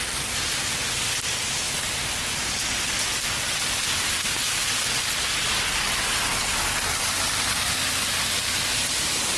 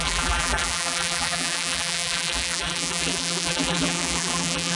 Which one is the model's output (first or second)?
second